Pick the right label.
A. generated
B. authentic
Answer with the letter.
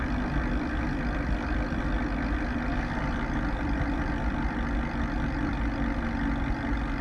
B